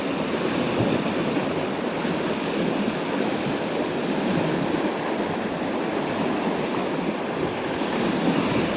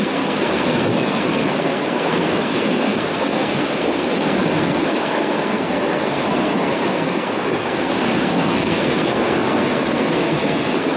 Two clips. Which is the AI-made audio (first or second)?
second